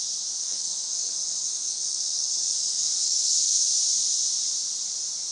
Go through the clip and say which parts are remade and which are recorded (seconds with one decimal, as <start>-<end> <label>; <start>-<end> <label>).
0.0-0.4 recorded; 0.4-3.6 remade; 3.6-5.3 recorded

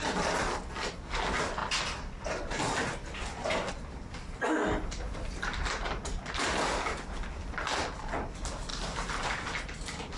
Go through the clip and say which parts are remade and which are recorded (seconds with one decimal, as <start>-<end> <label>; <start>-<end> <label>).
0.0-10.2 recorded

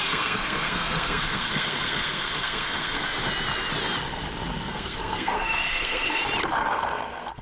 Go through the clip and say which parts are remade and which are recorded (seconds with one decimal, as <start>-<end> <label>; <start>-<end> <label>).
0.0-3.0 remade; 3.0-4.7 recorded; 4.7-6.2 remade; 6.2-6.7 recorded; 6.7-7.4 remade

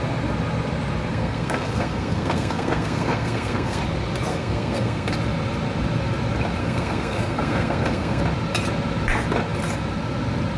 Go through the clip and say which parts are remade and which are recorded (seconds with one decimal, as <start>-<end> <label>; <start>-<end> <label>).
0.0-1.1 recorded; 1.1-3.8 remade; 3.8-4.3 recorded; 4.3-5.1 remade; 5.1-6.6 recorded; 6.6-8.2 remade; 8.2-10.6 recorded